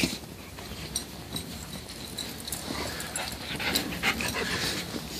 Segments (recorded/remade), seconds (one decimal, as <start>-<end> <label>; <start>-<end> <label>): 0.0-5.2 recorded